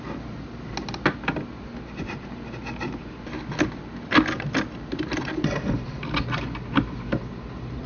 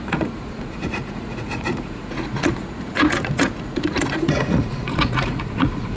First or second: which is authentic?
first